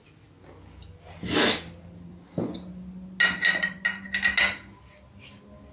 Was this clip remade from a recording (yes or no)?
no